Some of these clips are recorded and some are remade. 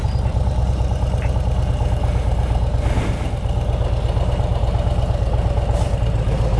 recorded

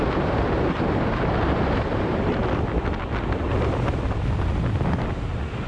recorded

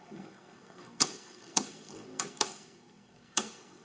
remade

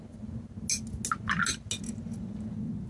recorded